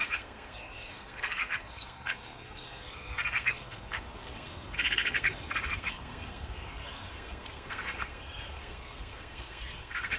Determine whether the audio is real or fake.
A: fake